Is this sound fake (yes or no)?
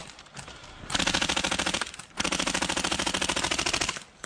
no